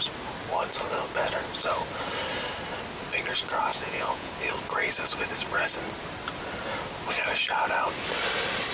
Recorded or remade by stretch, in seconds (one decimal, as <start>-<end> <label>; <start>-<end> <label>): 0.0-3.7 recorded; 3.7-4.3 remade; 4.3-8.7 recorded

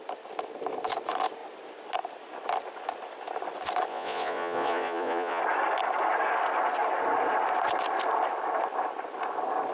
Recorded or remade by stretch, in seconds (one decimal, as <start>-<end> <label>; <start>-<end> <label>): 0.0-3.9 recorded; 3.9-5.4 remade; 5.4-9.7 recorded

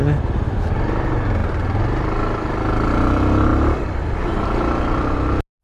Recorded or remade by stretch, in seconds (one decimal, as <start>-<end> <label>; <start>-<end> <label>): 0.0-5.6 recorded